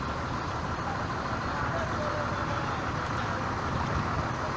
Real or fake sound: real